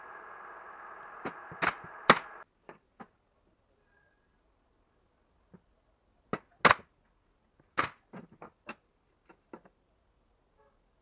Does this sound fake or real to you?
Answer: real